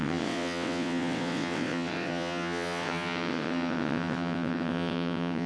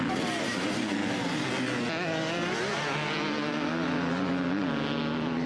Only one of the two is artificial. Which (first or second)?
first